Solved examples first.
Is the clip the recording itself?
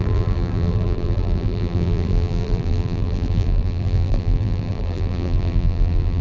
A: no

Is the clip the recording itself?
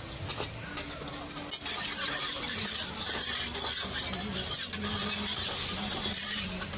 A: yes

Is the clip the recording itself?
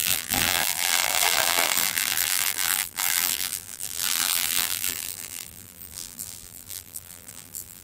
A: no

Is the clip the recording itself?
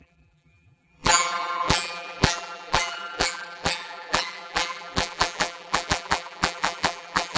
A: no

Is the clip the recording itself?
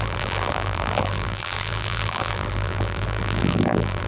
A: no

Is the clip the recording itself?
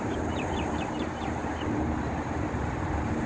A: no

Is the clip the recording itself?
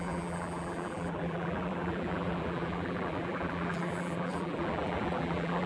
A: no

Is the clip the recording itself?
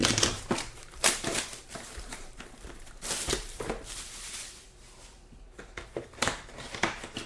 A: no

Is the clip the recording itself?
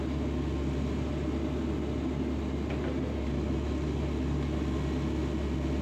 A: yes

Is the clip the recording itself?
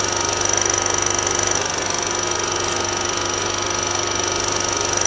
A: yes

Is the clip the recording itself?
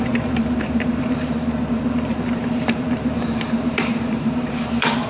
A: no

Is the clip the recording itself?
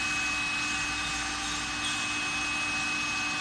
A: yes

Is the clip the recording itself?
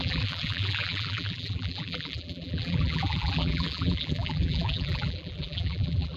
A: no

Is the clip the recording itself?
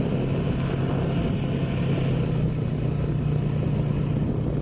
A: yes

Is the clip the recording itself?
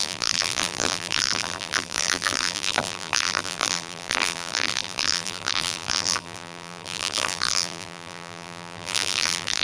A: no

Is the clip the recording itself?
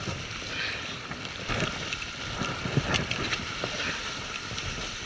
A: yes